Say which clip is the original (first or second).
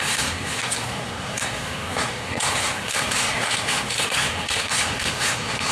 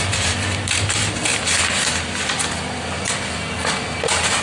second